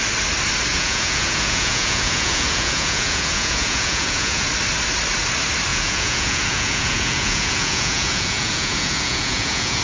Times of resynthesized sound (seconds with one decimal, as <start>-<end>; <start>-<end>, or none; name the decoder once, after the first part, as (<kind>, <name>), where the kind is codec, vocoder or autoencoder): 0.7-4.5 (vocoder, Vocos); 5.7-9.8